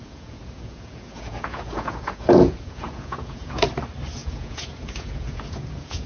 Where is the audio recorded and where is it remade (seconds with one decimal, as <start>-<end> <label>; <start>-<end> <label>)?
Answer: 0.0-3.7 remade; 3.7-4.2 recorded; 4.2-6.1 remade